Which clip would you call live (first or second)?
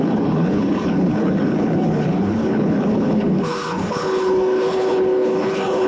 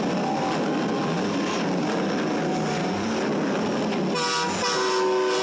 second